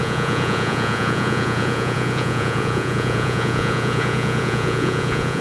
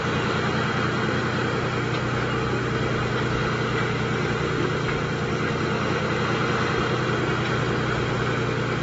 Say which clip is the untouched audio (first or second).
second